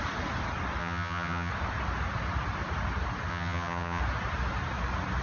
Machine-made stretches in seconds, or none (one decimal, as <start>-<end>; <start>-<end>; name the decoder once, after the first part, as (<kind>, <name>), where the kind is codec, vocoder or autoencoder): 0.8-1.5 (vocoder, HiFi-GAN); 3.3-4.0